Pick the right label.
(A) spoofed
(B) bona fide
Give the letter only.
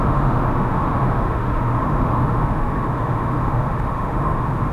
A